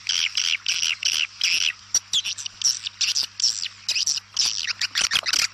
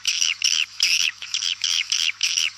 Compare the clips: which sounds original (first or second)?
first